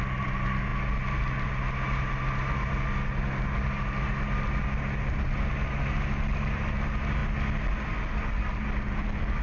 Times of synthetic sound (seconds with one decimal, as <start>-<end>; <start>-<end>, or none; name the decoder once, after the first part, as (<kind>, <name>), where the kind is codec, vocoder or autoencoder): none

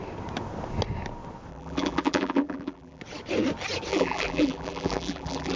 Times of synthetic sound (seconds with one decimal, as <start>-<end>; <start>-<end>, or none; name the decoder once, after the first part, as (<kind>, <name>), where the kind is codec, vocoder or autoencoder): 1.5-3.0 (vocoder, BigVGAN v2); 3.9-5.6

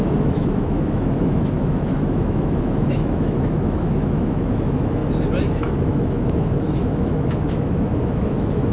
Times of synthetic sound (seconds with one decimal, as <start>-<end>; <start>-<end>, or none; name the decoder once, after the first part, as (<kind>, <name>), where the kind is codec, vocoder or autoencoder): 0.0-5.0 (autoencoder, DAC-VAE); 5.5-8.7

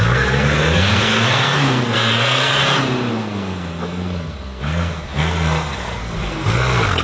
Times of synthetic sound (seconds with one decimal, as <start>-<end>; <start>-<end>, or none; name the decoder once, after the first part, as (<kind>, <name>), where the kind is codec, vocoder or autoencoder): 0.0-2.6 (codec, SNAC); 3.1-7.0

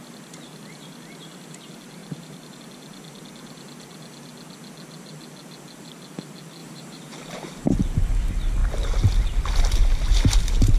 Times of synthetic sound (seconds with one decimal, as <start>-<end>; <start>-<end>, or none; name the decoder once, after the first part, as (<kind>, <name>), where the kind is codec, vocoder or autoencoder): 2.0-2.6 (vocoder, BigVGAN v2); 6.6-7.7